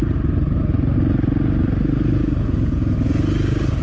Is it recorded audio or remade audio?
recorded